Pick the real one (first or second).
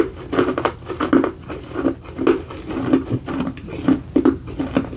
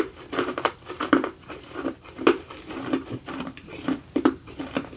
first